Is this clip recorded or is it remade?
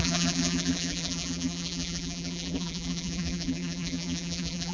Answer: remade